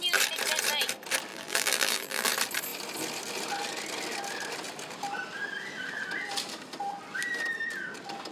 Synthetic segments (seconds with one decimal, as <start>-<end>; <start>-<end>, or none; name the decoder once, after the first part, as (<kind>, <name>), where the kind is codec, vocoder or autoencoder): 1.3-2.3 (vocoder, BigVGAN v2)